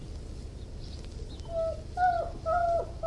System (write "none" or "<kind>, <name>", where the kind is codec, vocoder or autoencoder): none